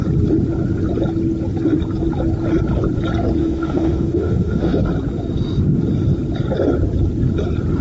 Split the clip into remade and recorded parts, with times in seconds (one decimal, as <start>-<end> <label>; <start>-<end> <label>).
0.0-3.4 recorded; 3.4-4.8 remade; 4.8-7.8 recorded